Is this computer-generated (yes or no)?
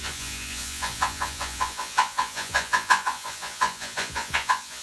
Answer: yes